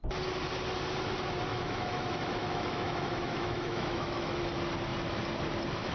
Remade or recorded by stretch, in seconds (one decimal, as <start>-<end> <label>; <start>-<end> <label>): 0.0-1.5 recorded; 1.5-4.4 remade; 4.4-5.9 recorded